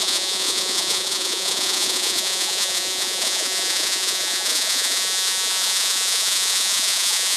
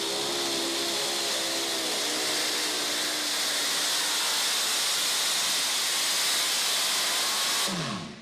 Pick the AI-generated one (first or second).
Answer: first